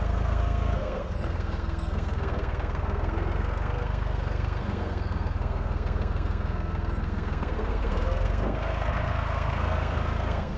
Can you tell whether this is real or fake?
fake